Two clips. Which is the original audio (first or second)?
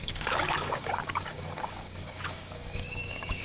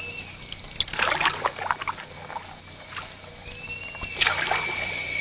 second